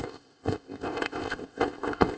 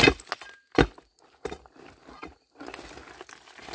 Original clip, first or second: second